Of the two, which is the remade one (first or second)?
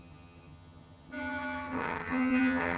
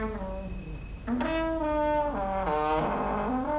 first